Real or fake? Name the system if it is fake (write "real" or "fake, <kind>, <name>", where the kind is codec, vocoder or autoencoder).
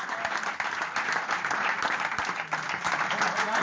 real